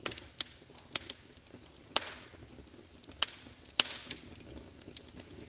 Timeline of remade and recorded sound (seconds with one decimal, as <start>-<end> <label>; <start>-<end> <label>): 0.0-5.5 recorded